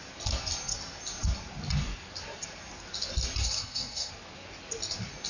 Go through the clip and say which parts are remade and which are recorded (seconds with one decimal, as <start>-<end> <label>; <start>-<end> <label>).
0.0-3.4 recorded; 3.4-4.1 remade; 4.1-5.3 recorded